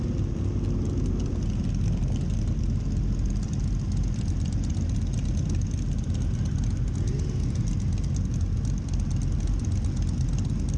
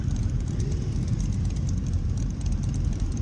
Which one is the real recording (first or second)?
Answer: first